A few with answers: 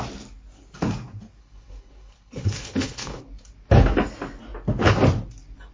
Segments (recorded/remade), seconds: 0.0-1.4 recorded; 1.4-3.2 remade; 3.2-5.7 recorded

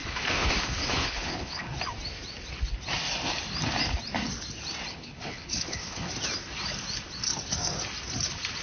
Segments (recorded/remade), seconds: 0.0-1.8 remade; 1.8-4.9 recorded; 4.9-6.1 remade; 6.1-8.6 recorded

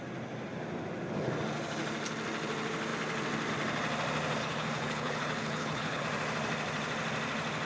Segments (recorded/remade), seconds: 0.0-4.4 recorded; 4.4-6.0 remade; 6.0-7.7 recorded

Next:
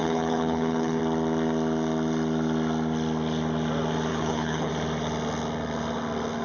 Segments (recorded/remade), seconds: 0.0-1.0 remade; 1.0-4.1 recorded; 4.1-4.7 remade; 4.7-6.4 recorded